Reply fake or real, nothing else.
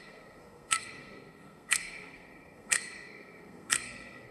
fake